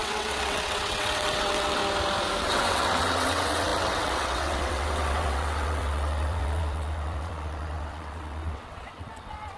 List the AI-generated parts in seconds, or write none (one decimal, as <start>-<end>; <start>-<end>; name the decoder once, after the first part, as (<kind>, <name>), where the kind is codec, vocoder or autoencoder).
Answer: 0.0-1.8 (vocoder, WaveNeXt); 2.4-9.6